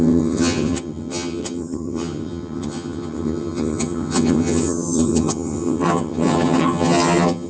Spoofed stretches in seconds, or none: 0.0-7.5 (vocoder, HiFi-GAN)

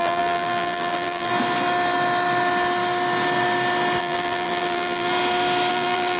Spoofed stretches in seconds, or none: 0.0-1.3 (vocoder, BigVGAN v2); 4.0-5.1; 5.7-6.2

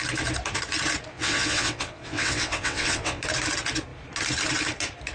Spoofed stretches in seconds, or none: 1.1-3.2 (vocoder, WaveNeXt)